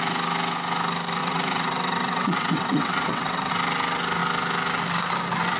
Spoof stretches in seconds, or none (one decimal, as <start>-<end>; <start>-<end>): 1.2-3.5